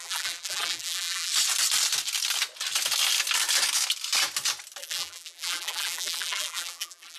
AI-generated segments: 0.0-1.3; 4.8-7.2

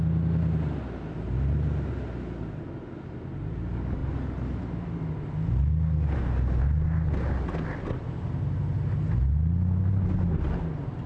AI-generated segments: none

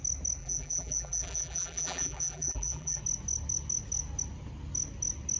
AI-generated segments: 0.4-3.0